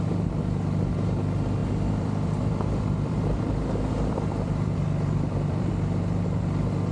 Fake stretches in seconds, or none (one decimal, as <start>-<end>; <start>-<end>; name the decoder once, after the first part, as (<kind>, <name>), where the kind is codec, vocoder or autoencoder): 1.6-5.7 (vocoder, BigVGAN v2)